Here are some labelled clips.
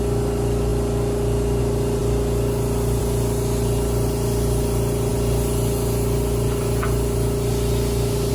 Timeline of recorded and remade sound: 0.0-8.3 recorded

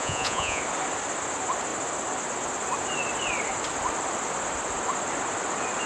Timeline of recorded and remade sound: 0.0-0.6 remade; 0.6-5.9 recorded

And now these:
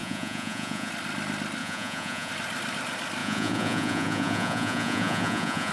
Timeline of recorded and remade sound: 0.0-0.9 remade; 0.9-1.6 recorded; 1.6-2.3 remade; 2.3-3.2 recorded; 3.2-5.7 remade